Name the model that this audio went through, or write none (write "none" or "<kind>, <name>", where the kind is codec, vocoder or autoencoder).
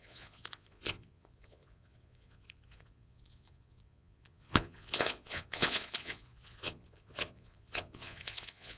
vocoder, Vocos